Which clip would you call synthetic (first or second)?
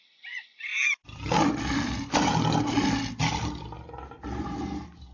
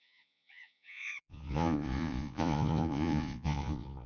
second